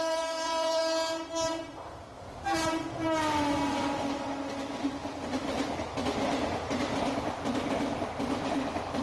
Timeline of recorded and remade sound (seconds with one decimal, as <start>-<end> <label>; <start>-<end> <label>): 0.0-0.8 remade; 0.8-6.0 recorded; 6.0-9.0 remade